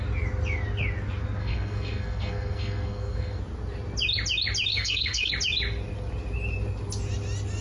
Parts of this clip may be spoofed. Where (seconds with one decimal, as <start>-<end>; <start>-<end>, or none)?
1.4-3.4; 4.7-5.3